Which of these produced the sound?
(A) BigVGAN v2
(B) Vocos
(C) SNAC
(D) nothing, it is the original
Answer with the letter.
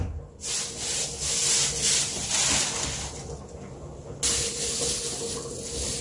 D